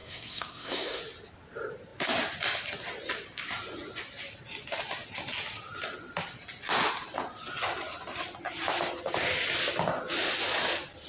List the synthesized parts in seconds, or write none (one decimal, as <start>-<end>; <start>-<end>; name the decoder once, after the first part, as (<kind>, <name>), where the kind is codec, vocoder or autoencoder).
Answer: 0.0-1.0 (codec, SNAC)

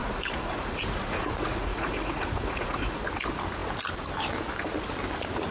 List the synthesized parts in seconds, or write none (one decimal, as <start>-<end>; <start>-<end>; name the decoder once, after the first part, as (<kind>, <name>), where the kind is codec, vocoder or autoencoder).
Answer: 0.0-3.0 (vocoder, Vocos)

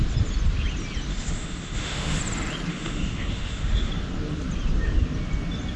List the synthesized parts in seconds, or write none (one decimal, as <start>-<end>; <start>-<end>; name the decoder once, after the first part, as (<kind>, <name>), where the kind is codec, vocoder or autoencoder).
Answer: 1.1-2.2 (autoencoder, DAC-VAE); 2.7-3.9